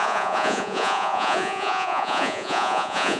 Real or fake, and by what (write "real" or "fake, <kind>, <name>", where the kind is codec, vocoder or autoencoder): fake, vocoder, Vocos